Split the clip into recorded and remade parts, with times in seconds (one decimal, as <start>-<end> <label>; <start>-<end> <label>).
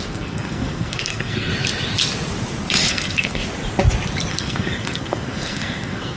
0.0-1.5 remade; 1.5-2.9 recorded; 2.9-3.4 remade; 3.4-4.3 recorded; 4.3-6.2 remade